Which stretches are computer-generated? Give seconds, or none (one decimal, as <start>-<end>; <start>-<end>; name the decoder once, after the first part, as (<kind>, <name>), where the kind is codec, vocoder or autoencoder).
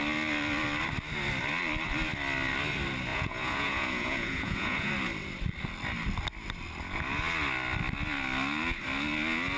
3.1-4.9 (vocoder, Vocos)